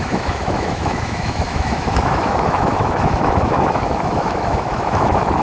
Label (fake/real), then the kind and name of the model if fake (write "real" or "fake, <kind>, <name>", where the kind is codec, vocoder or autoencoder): fake, autoencoder, DAC-VAE